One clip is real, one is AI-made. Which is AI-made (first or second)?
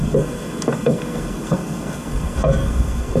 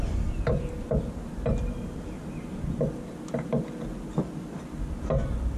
first